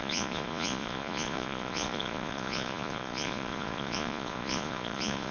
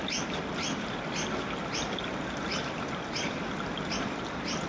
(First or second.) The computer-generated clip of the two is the first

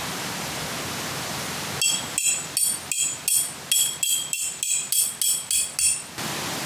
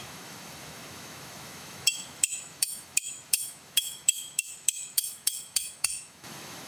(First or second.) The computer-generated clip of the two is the second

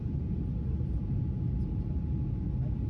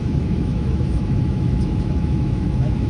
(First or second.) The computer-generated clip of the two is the second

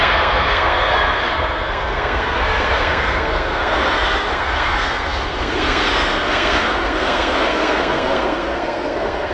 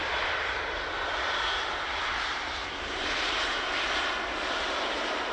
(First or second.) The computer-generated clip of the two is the first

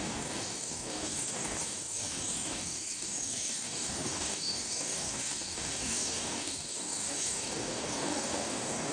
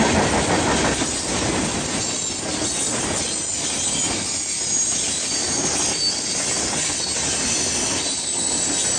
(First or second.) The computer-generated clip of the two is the first